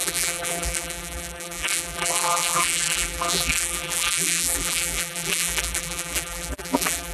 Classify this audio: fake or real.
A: fake